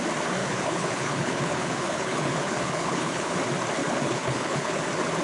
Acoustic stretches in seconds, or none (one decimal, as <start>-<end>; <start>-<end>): 0.0-0.4; 3.4-3.8; 4.8-5.2